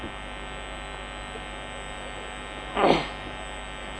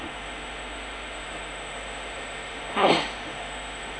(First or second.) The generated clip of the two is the second